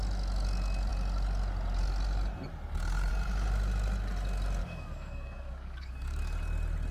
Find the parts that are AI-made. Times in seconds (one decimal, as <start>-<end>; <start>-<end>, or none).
4.6-6.2